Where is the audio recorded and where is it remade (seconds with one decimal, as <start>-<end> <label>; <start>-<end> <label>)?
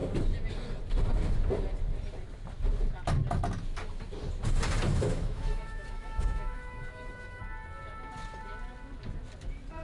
0.0-4.9 recorded; 4.9-7.4 remade; 7.4-9.8 recorded